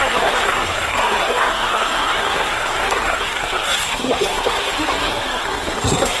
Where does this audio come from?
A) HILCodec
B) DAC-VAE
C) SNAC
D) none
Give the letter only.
C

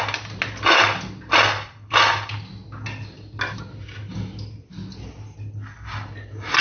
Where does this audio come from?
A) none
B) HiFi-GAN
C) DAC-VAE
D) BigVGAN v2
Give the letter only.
A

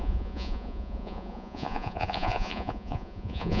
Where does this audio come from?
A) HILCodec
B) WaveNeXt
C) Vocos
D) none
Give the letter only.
C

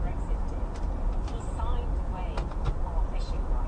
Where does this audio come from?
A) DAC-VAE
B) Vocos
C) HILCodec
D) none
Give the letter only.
D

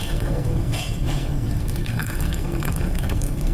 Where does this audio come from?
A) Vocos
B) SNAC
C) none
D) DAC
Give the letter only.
B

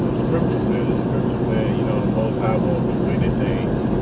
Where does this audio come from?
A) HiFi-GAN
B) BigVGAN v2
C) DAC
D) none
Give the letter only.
D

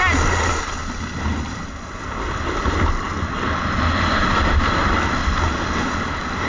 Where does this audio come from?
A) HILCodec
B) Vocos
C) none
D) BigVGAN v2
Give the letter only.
C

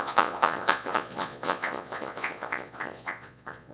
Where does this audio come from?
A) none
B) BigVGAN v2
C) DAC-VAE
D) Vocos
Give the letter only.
D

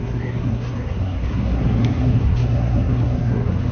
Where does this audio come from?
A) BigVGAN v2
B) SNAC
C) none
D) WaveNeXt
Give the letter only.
B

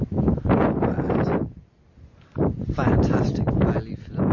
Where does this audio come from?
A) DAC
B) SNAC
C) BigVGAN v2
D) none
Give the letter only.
D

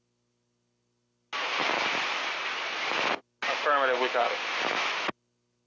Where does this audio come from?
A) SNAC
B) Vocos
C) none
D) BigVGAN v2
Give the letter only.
C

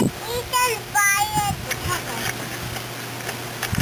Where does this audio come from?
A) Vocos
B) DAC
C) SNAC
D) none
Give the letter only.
D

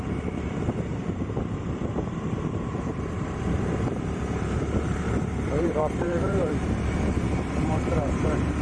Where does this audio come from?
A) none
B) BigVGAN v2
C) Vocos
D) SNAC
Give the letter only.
B